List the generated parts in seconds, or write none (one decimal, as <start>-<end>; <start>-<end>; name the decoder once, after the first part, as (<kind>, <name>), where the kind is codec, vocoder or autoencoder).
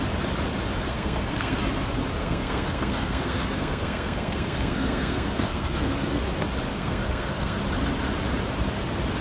0.9-1.6 (codec, SNAC); 2.2-6.2; 6.7-7.6